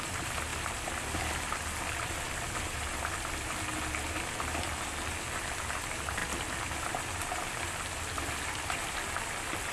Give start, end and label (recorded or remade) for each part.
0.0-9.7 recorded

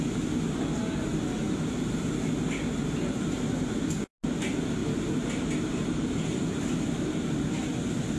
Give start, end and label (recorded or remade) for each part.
0.0-8.2 recorded

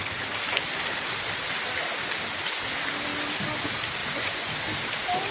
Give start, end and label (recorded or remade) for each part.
0.0-4.0 recorded; 4.0-4.5 remade; 4.5-5.3 recorded

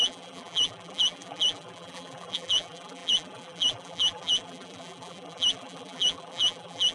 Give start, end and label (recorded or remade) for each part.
0.0-6.9 remade

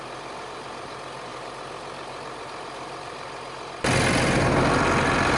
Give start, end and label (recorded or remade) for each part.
0.0-5.4 recorded

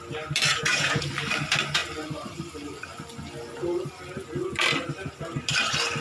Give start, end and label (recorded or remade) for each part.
0.0-0.5 recorded; 0.5-1.1 remade; 1.1-6.0 recorded

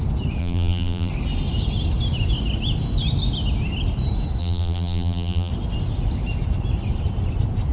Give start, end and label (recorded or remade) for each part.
0.0-0.4 recorded; 0.4-1.1 remade; 1.1-4.4 recorded; 4.4-5.5 remade; 5.5-7.7 recorded